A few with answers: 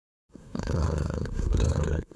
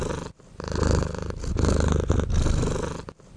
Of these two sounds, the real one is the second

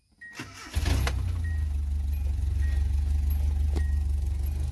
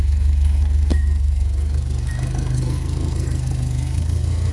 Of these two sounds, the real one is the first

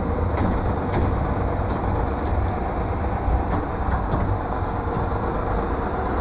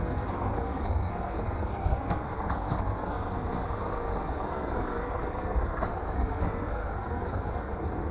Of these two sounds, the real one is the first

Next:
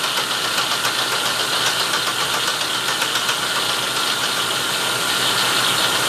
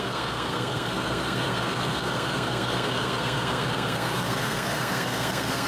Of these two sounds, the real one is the first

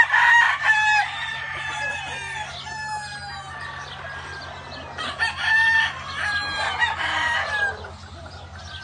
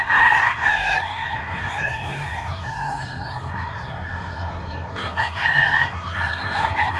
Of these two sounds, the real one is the first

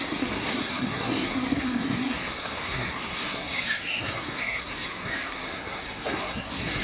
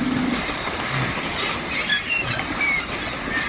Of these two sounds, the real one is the second